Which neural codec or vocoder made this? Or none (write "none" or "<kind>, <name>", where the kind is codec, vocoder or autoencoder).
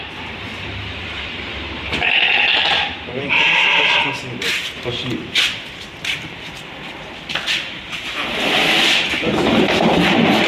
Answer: vocoder, BigVGAN v2